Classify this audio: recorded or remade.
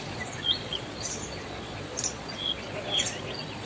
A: remade